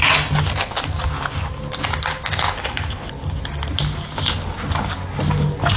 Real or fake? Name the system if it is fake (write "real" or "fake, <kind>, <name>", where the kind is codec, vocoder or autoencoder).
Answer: real